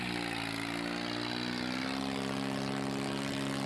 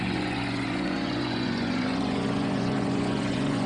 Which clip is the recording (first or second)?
first